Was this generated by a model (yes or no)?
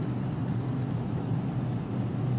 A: no